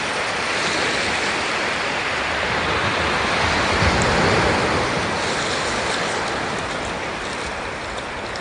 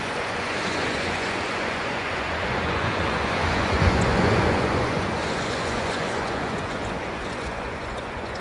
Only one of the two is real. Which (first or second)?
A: first